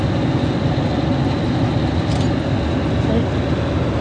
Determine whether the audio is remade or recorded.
recorded